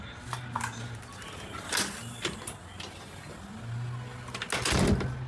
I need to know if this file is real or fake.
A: real